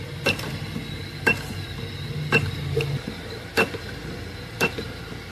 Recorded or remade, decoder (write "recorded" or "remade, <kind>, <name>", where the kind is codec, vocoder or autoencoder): recorded